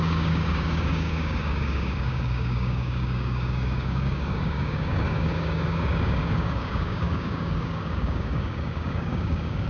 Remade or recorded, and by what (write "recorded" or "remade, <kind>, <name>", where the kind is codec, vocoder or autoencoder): remade, codec, DAC